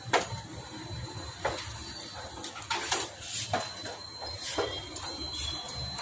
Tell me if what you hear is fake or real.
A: real